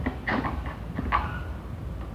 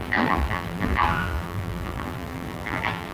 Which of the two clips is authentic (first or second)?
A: first